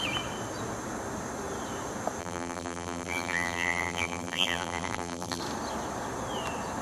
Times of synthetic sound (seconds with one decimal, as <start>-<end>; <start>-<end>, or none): 2.2-5.4